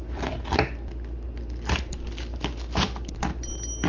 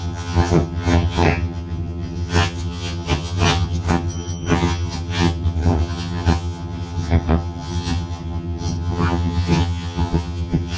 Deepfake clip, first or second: second